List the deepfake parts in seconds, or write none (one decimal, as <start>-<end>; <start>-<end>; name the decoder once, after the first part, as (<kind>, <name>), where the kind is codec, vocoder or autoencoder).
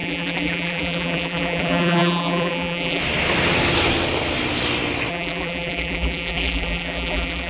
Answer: 0.0-3.0 (vocoder, BigVGAN v2); 5.1-7.5